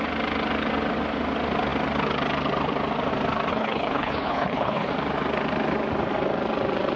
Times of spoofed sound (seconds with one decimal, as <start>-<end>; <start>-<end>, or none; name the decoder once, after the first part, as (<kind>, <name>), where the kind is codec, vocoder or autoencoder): 3.5-4.9 (codec, HILCodec)